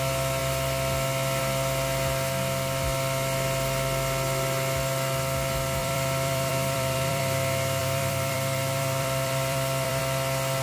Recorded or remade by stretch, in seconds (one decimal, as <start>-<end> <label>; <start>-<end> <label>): 0.0-5.8 recorded; 5.8-7.2 remade; 7.2-7.8 recorded; 7.8-10.0 remade; 10.0-10.6 recorded